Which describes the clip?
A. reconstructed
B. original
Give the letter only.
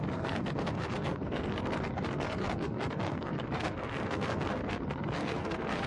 A